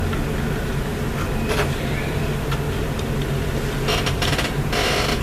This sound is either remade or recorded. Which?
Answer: recorded